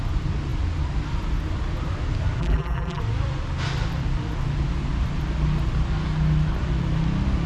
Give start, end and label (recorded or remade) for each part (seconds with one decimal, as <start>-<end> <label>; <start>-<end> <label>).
0.0-2.4 recorded; 2.4-3.0 remade; 3.0-7.5 recorded